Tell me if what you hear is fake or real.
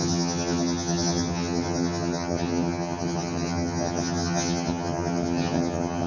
fake